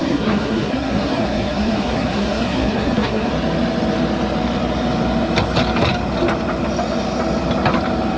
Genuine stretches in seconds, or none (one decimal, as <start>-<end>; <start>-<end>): 3.3-8.2